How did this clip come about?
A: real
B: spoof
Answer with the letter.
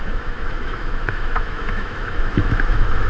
B